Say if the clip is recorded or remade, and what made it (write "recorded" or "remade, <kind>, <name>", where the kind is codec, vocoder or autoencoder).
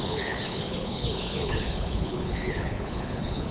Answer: remade, codec, HILCodec